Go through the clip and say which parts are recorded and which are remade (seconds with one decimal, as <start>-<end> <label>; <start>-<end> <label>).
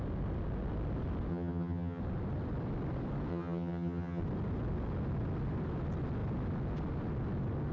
0.0-1.3 recorded; 1.3-2.0 remade; 2.0-3.3 recorded; 3.3-4.2 remade; 4.2-7.7 recorded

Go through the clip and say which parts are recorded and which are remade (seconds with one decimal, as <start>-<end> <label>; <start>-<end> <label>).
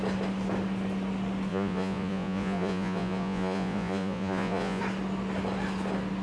0.0-1.5 recorded; 1.5-4.8 remade; 4.8-6.2 recorded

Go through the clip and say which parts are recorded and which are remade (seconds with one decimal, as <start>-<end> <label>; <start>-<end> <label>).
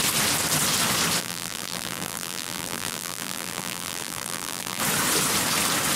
0.0-1.2 recorded; 1.2-4.8 remade; 4.8-6.0 recorded